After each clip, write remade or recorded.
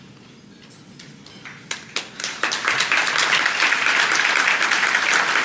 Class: recorded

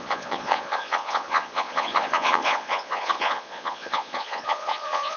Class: remade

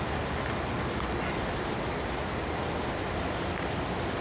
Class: recorded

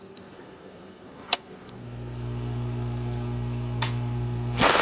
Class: remade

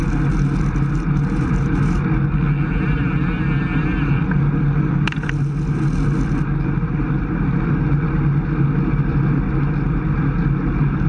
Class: recorded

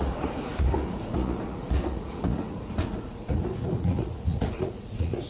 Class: remade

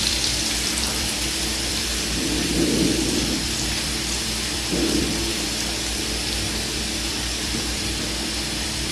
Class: remade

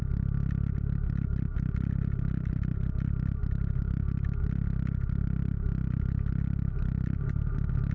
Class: recorded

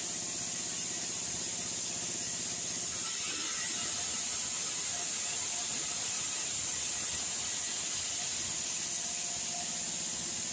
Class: recorded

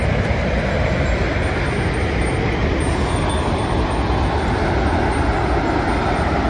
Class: recorded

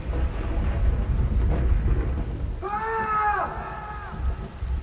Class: recorded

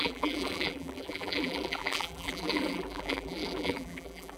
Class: remade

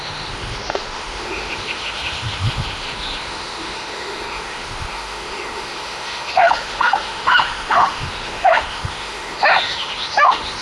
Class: remade